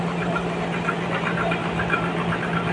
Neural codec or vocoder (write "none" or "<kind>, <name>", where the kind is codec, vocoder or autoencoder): none